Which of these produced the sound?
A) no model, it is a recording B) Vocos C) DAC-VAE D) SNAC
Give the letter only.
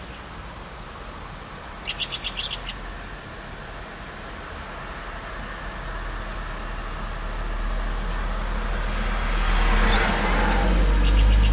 A